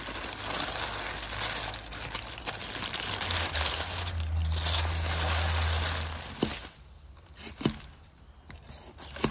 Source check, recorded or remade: recorded